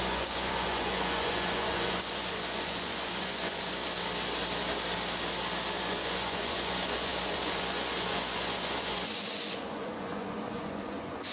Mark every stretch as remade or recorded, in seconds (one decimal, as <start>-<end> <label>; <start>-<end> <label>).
0.0-3.8 remade; 3.8-5.8 recorded; 5.8-11.3 remade